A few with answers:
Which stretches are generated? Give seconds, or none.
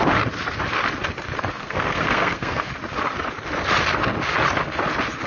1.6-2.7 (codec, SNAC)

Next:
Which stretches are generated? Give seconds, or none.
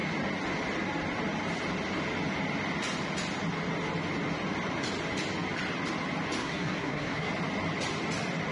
6.4-7.3 (codec, SNAC)